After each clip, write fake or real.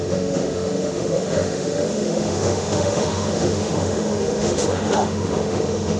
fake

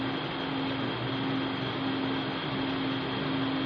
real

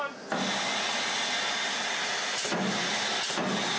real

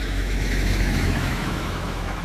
fake